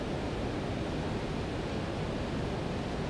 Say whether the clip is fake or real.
real